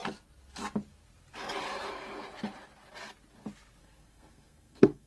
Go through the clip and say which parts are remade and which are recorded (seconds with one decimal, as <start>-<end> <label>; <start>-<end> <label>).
0.0-3.8 recorded; 3.8-5.1 remade

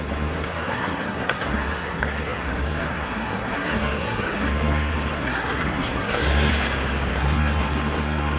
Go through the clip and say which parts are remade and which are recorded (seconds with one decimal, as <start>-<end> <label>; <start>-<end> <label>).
0.0-6.5 remade; 6.5-7.1 recorded; 7.1-8.4 remade